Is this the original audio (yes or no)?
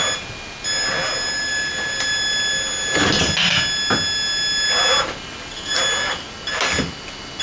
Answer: yes